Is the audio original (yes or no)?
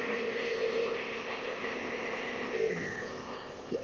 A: no